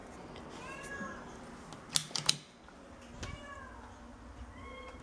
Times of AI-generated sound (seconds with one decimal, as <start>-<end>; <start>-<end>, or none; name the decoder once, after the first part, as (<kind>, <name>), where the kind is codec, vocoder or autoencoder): none